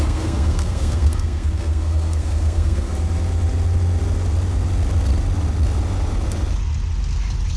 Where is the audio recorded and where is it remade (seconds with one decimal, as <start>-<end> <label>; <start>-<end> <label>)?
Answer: 0.0-2.9 remade; 2.9-7.6 recorded